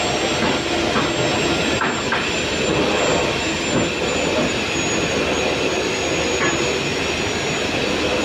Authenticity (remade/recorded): recorded